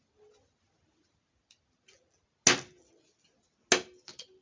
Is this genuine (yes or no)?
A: yes